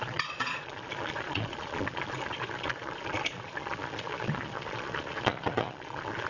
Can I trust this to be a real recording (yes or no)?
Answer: no